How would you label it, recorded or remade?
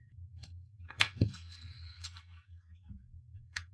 remade